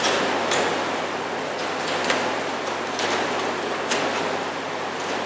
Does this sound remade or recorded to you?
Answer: recorded